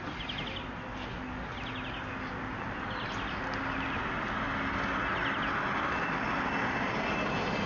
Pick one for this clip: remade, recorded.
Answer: recorded